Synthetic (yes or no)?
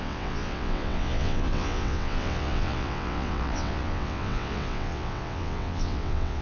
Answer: yes